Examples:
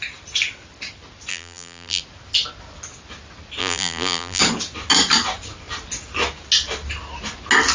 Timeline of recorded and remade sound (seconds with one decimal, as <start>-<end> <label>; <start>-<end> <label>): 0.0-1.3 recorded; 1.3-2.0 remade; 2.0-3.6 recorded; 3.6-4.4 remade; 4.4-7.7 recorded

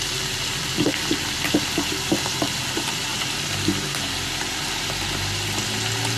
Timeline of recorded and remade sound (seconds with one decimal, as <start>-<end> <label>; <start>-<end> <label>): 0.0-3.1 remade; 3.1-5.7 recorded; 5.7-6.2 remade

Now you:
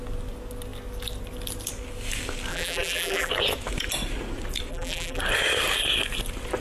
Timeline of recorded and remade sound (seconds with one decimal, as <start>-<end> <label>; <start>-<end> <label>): 0.0-2.5 recorded; 2.5-3.3 remade; 3.3-4.7 recorded; 4.7-5.2 remade; 5.2-6.6 recorded

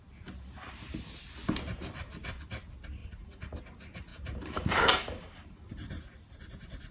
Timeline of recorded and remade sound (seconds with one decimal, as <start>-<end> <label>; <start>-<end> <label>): 0.0-3.0 recorded; 3.0-3.6 remade; 3.6-4.1 recorded; 4.1-6.0 remade; 6.0-6.9 recorded

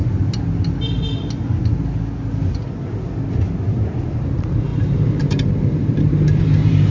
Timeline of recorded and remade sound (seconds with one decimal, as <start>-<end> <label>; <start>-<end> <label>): 0.0-4.1 recorded; 4.1-6.9 remade